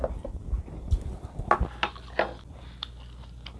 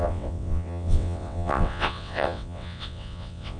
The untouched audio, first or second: first